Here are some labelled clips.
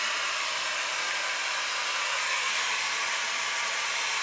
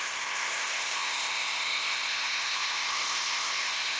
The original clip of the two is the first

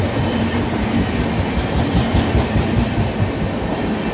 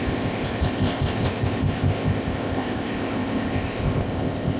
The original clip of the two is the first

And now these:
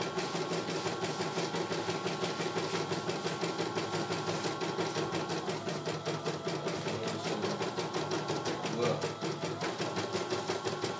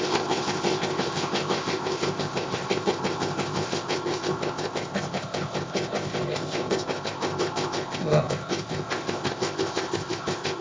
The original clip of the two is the first